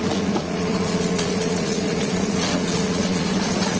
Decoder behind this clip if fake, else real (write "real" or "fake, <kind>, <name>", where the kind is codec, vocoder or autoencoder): fake, vocoder, Vocos